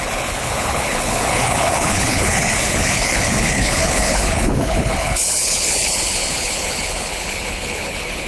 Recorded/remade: remade